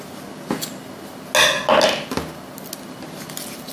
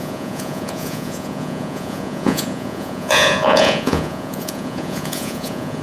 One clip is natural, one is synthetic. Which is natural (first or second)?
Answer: first